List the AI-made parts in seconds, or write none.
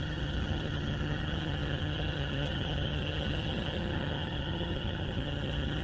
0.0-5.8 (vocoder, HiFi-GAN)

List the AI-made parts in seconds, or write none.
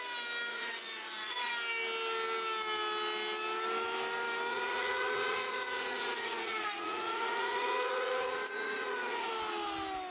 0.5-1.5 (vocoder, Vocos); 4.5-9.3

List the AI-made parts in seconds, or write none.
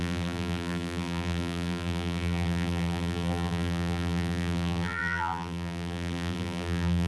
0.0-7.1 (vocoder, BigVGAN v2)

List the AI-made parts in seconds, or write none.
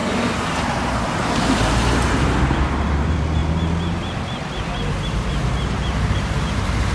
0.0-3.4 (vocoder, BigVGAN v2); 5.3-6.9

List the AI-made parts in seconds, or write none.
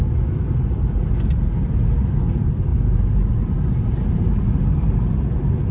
none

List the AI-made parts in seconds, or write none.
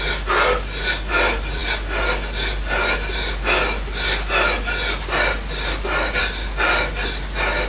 none